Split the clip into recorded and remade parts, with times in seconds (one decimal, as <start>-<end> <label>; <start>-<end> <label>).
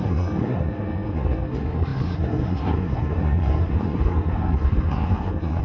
0.0-5.6 remade